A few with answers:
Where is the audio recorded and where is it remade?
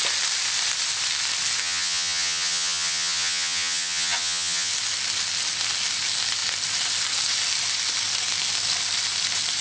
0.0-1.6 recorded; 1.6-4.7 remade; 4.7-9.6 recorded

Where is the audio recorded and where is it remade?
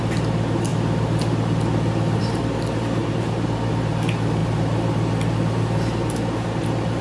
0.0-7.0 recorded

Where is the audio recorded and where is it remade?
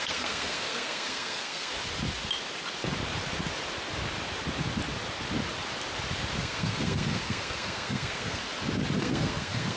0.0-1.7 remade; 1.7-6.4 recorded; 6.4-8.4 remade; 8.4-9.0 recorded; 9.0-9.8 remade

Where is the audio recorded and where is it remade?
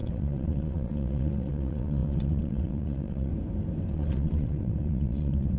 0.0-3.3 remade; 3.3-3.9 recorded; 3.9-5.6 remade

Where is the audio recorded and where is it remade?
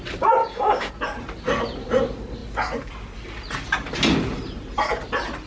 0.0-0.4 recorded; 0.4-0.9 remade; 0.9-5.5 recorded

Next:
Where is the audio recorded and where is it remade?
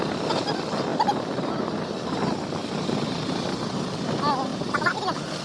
0.0-0.9 recorded; 0.9-2.0 remade; 2.0-4.5 recorded; 4.5-5.4 remade